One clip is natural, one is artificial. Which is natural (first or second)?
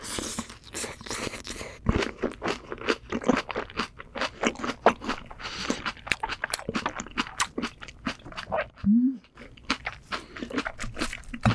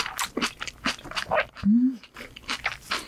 second